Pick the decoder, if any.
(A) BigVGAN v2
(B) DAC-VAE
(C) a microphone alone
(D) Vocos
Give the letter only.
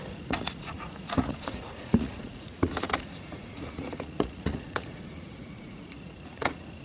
D